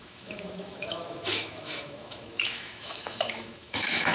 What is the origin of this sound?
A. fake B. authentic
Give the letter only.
A